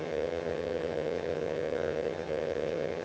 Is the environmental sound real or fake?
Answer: fake